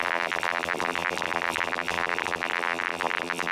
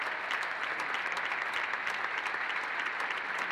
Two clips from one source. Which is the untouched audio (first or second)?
second